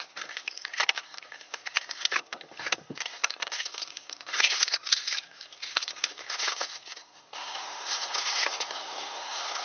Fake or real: fake